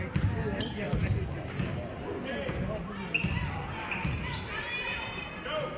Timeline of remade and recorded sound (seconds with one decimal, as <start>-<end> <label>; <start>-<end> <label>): 0.0-5.8 recorded